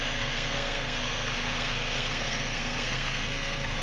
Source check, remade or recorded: remade